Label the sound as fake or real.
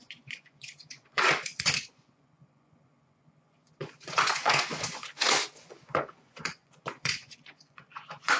fake